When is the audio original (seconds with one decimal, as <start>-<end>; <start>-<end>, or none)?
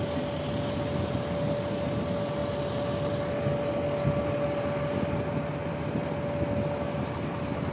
0.0-7.7